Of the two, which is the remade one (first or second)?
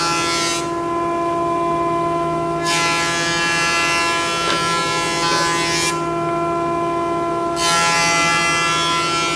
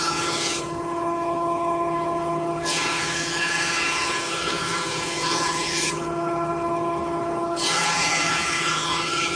second